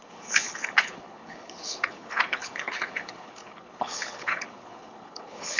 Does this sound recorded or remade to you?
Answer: remade